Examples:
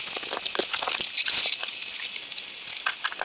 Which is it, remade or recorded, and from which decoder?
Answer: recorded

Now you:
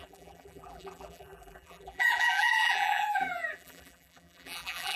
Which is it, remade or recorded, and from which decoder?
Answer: remade, vocoder, BigVGAN v2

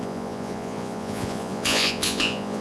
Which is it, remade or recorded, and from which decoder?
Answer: remade, vocoder, Vocos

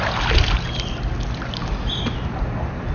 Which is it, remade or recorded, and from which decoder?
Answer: recorded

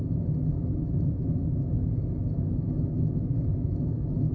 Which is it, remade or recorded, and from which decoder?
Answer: remade, autoencoder, DAC-VAE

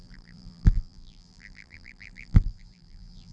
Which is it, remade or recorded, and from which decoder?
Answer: remade, vocoder, BigVGAN v2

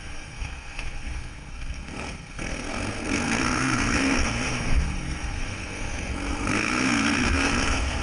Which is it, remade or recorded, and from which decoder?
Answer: remade, codec, SNAC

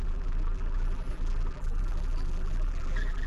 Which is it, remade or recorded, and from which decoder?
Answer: remade, vocoder, BigVGAN v2